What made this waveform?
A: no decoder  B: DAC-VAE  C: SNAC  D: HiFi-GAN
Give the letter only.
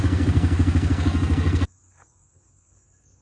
C